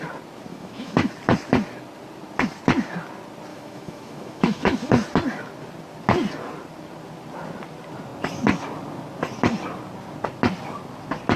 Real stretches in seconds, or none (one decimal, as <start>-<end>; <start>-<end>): 0.0-0.5; 1.1-3.5; 4.9-11.4